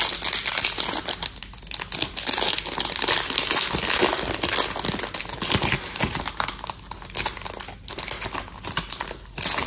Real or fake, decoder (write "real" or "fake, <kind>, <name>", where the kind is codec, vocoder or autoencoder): real